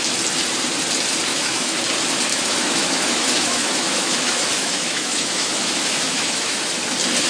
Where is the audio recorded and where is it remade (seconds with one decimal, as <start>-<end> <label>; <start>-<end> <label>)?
0.0-1.3 recorded; 1.3-1.8 remade; 1.8-2.3 recorded; 2.3-6.7 remade; 6.7-7.3 recorded